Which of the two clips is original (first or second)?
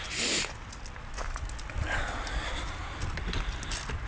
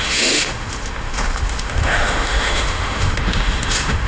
first